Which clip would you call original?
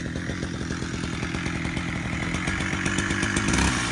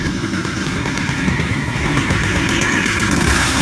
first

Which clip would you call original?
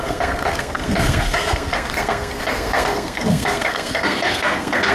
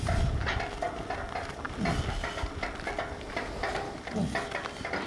second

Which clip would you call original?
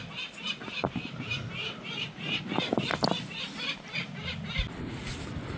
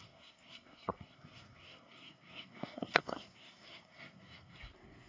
first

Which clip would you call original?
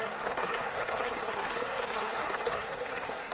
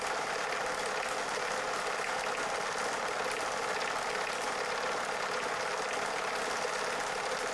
second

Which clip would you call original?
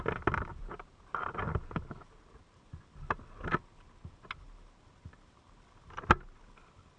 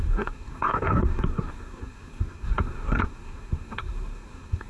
first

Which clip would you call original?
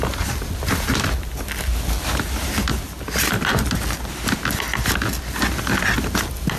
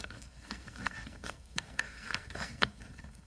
first